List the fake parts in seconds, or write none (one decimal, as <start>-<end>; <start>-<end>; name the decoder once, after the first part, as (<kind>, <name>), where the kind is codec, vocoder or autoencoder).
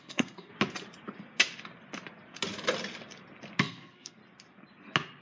0.0-0.5 (codec, SNAC); 3.6-4.2